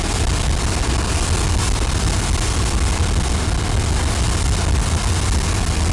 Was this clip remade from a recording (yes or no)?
no